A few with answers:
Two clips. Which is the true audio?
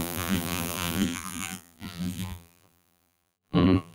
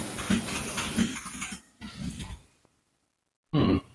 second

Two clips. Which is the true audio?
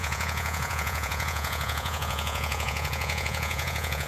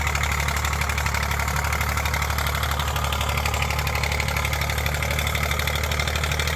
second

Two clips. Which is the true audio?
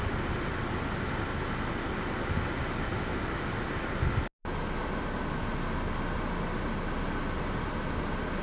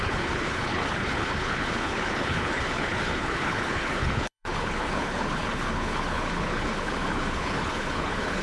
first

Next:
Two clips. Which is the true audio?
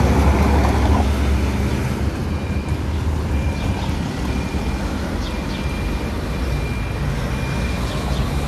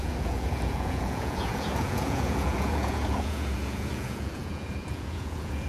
first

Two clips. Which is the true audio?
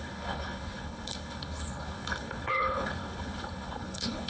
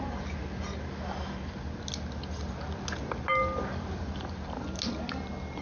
second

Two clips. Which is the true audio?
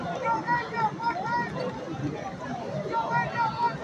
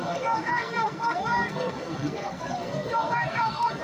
first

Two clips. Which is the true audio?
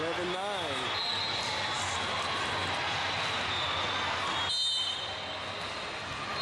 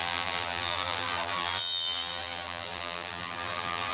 first